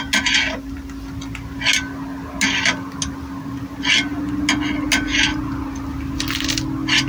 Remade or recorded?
recorded